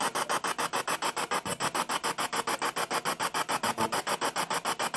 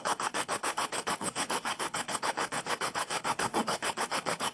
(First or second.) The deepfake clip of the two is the second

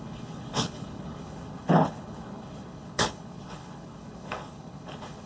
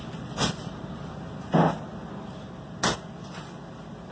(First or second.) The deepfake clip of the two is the first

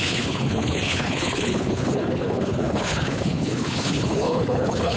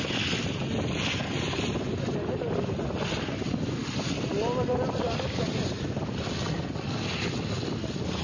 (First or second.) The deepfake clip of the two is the first